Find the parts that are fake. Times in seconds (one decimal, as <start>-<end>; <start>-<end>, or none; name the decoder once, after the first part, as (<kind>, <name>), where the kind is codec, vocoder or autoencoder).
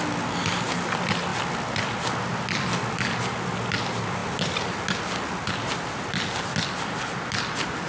none